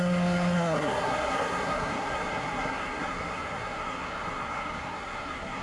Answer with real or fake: fake